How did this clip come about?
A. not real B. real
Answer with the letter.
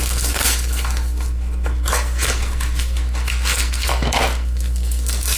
A